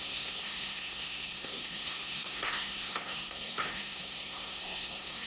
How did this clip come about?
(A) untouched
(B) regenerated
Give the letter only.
B